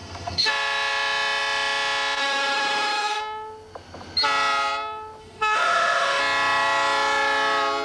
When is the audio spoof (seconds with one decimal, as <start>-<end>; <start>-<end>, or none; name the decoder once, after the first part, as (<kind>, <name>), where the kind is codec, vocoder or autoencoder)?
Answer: 0.0-0.5 (autoencoder, DAC-VAE); 2.2-3.2; 5.2-6.2